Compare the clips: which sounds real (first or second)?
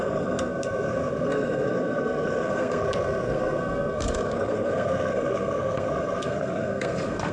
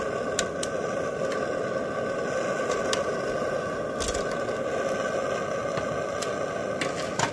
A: second